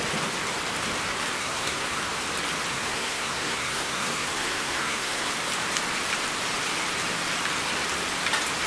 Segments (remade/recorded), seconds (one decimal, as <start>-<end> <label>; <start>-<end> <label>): 0.0-1.4 recorded; 1.4-2.0 remade; 2.0-2.7 recorded; 2.7-5.3 remade; 5.3-8.7 recorded